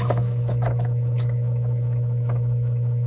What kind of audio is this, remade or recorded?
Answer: remade